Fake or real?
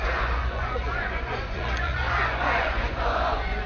fake